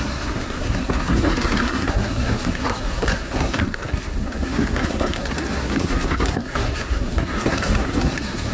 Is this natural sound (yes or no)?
no